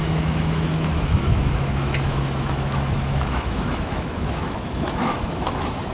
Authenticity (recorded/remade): remade